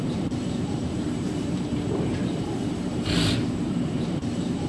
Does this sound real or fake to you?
fake